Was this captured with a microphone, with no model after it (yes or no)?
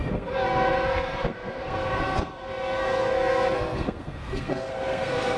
no